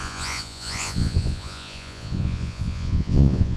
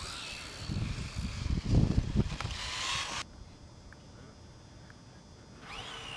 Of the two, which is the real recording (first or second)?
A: second